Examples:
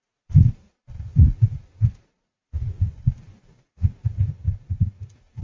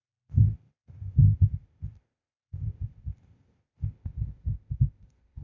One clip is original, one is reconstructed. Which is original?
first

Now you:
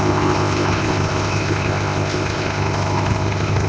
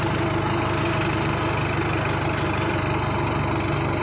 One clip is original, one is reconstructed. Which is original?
second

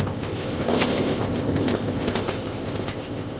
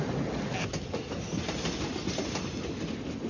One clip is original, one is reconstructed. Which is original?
second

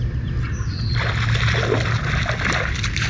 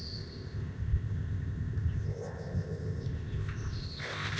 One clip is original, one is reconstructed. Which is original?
first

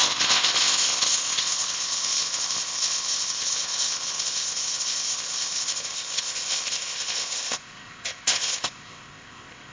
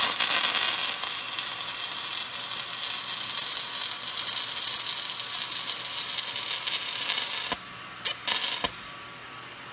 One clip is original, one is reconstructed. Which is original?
second